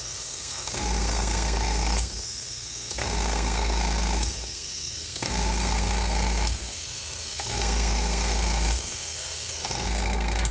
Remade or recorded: remade